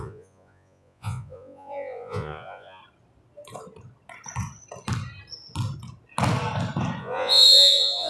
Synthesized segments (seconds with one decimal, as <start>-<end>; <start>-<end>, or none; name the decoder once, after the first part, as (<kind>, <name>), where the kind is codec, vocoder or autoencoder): 0.0-2.8 (vocoder, Vocos); 7.0-8.1